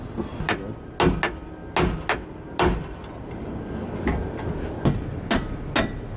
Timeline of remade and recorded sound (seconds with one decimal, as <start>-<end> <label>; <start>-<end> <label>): 0.0-6.2 recorded